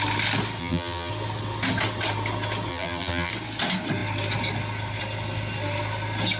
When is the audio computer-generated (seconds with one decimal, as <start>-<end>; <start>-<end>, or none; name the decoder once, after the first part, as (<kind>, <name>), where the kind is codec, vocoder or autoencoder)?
0.6-1.1 (vocoder, BigVGAN v2); 2.7-3.3